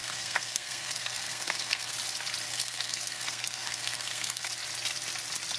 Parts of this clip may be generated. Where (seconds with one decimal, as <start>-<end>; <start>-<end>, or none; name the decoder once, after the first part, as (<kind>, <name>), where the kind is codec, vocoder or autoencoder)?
0.0-1.9 (codec, SNAC); 2.5-4.5